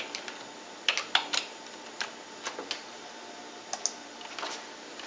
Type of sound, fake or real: real